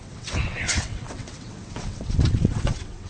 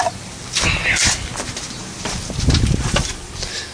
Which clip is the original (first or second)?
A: second